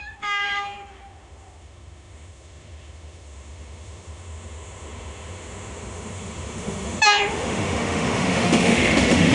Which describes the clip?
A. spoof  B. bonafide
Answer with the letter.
A